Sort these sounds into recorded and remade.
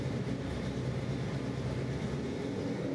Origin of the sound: recorded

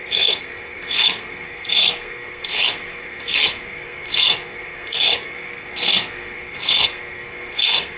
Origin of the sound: remade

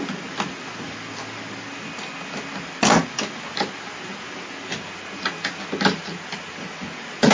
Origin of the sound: recorded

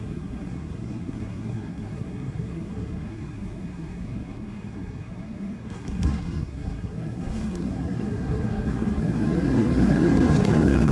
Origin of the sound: remade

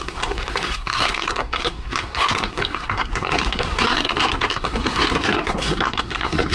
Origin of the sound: remade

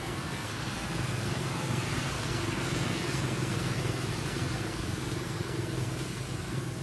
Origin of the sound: remade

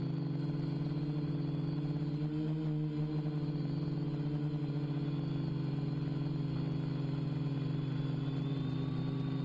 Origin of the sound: recorded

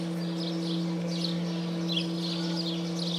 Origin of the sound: recorded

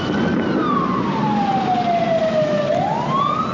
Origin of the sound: recorded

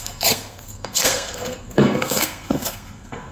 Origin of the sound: remade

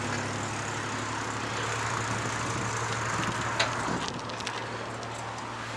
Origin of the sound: recorded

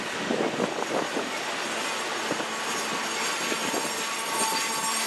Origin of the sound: recorded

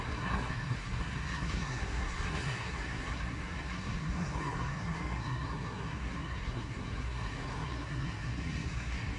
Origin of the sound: remade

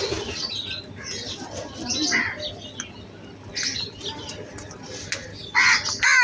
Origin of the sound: recorded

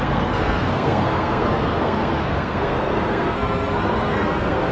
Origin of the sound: remade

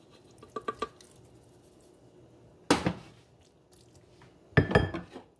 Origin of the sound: recorded